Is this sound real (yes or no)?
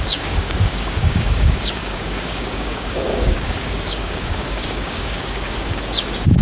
no